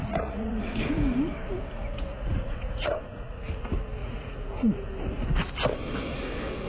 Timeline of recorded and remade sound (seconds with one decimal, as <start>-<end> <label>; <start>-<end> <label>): 0.0-0.8 remade; 0.8-2.1 recorded; 2.1-3.4 remade; 3.4-4.0 recorded; 4.0-4.9 remade; 4.9-6.7 recorded

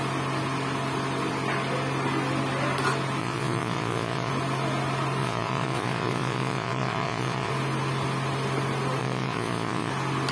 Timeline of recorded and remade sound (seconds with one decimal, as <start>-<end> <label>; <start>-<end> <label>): 0.0-3.2 recorded; 3.2-4.3 remade; 4.3-5.2 recorded; 5.2-7.5 remade; 7.5-9.0 recorded; 9.0-9.9 remade; 9.9-10.3 recorded

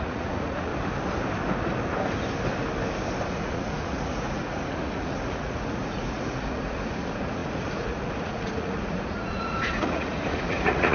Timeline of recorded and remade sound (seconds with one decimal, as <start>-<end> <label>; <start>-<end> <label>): 0.0-0.7 remade; 0.7-3.3 recorded; 3.3-10.9 remade

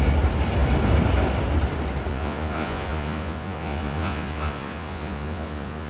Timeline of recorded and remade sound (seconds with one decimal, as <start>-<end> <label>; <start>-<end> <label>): 0.0-2.1 recorded; 2.1-5.9 remade

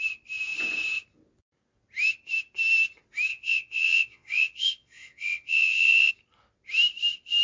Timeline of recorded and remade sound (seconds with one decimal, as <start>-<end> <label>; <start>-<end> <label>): 0.0-3.3 recorded; 3.3-6.1 remade; 6.1-7.4 recorded